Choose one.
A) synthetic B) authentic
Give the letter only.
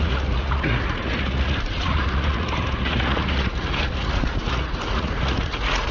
A